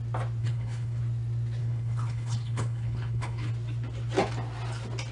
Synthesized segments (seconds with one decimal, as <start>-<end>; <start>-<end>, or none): 0.4-1.0; 1.6-3.5